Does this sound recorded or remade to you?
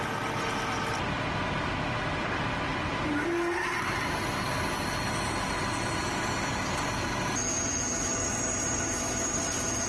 recorded